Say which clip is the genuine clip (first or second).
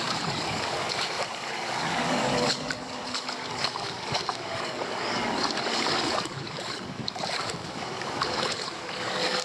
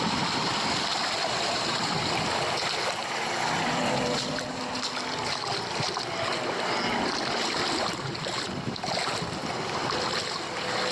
second